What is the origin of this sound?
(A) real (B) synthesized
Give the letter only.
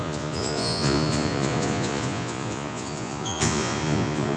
B